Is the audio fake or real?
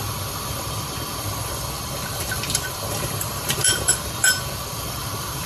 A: fake